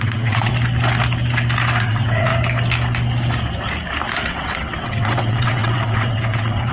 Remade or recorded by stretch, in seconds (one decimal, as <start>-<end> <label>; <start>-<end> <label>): 0.0-0.5 remade; 0.5-1.8 recorded; 1.8-2.3 remade; 2.3-4.3 recorded; 4.3-6.7 remade